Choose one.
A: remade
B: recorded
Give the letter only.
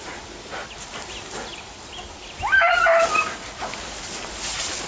B